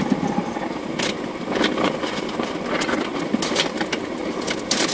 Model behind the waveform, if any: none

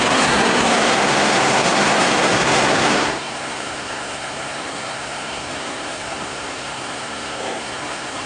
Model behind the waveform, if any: codec, SNAC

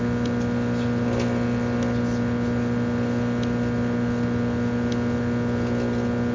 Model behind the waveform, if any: none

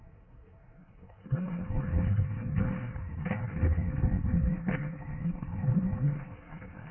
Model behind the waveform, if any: codec, SNAC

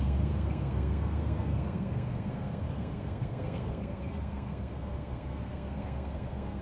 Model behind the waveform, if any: codec, SNAC